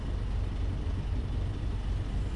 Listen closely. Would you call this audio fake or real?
real